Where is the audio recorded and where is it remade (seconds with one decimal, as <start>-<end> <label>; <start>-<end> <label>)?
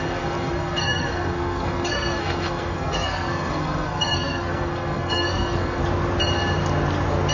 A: 0.0-5.8 remade; 5.8-7.3 recorded